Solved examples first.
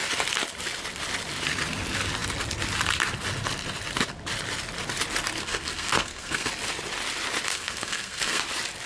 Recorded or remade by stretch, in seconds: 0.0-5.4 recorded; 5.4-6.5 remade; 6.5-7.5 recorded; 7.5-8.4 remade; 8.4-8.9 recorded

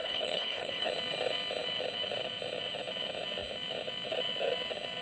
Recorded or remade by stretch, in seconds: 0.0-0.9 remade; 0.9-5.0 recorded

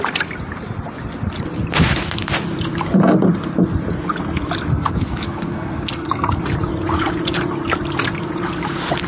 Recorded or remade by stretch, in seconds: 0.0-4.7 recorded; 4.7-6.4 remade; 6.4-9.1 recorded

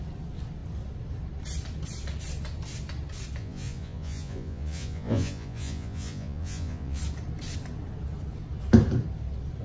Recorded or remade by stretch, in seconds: 0.0-3.4 recorded; 3.4-7.0 remade; 7.0-9.6 recorded

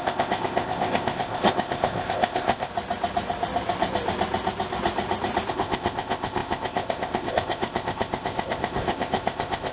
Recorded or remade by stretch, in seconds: 0.0-2.7 remade; 2.7-5.5 recorded; 5.5-9.7 remade